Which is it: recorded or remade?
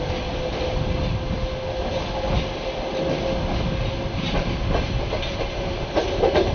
recorded